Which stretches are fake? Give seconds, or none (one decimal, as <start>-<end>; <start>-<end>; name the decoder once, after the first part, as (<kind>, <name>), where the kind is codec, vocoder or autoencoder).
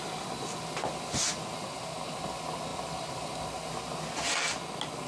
none